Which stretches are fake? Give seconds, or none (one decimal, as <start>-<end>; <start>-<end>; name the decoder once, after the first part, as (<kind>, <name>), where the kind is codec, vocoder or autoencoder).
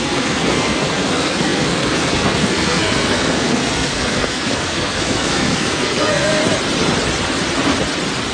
0.0-6.4 (codec, SNAC)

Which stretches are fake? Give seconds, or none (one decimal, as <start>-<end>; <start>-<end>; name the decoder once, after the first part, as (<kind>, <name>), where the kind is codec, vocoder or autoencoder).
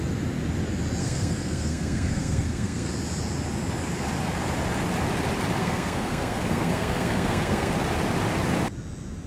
1.0-2.9 (codec, SNAC); 5.6-7.7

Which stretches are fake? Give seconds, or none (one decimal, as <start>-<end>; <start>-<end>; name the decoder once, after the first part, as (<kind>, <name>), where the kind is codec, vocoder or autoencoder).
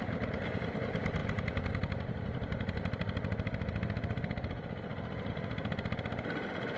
none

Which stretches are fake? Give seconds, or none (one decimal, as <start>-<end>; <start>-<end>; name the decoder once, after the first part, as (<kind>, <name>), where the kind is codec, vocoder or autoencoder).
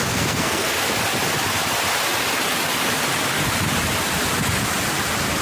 0.0-0.9 (codec, SNAC)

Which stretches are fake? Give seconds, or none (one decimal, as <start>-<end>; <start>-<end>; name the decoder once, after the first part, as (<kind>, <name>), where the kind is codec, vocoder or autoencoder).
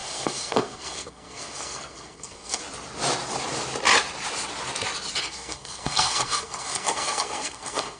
0.0-2.6 (codec, SNAC); 5.2-8.0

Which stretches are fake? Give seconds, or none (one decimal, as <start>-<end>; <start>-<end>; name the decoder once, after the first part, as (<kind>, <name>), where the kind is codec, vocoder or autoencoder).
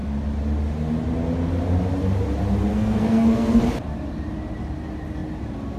2.7-3.6 (codec, SNAC)